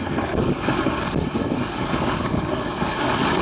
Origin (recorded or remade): remade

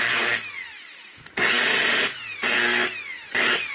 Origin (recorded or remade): recorded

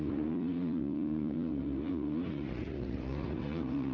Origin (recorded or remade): remade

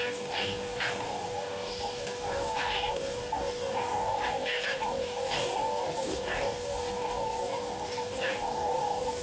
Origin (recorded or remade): remade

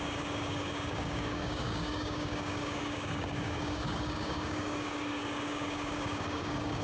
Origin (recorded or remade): remade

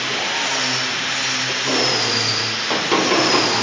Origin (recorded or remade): recorded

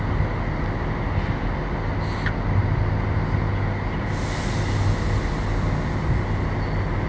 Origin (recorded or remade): recorded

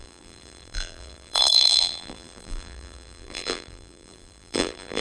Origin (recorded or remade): remade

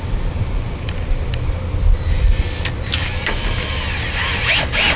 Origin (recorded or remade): recorded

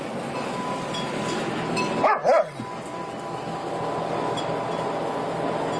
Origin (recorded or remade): recorded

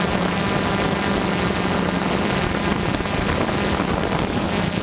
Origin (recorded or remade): recorded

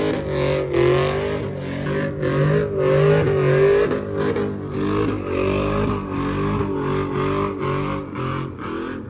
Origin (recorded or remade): recorded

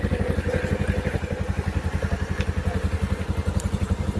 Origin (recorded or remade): recorded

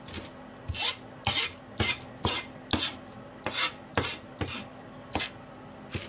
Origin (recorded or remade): recorded